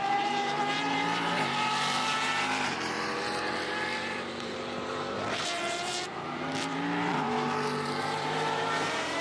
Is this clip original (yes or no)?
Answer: no